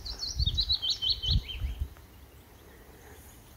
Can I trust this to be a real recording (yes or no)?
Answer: yes